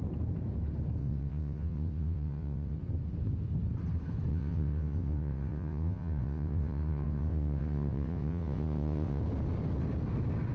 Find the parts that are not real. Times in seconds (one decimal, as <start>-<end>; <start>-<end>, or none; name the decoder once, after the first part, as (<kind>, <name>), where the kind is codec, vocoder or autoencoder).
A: 1.0-2.8 (vocoder, WaveNeXt); 4.3-9.2